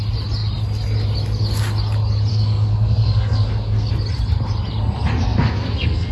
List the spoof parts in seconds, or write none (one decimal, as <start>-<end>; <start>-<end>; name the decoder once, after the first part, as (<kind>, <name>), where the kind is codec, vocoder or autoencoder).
2.3-3.9 (codec, SNAC); 5.2-6.1